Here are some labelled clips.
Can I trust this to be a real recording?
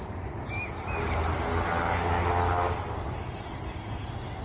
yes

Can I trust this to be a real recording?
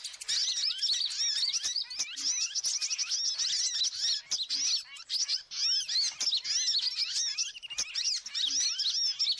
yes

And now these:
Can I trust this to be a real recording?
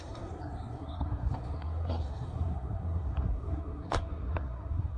no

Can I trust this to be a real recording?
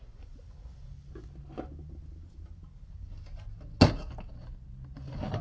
yes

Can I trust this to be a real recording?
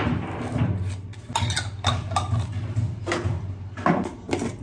yes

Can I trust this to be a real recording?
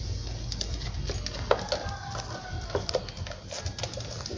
yes